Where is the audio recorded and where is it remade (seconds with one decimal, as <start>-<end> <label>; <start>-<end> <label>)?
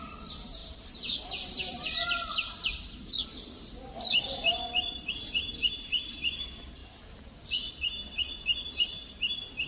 0.0-0.6 recorded; 0.6-5.1 remade; 5.1-6.8 recorded; 6.8-7.7 remade; 7.7-9.7 recorded